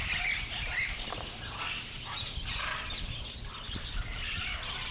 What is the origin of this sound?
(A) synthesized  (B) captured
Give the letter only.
B